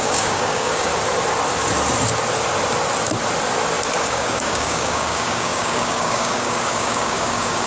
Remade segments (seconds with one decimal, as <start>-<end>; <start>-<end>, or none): 0.0-0.9; 4.0-7.7